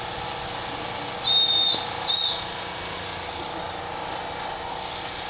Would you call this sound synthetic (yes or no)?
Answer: no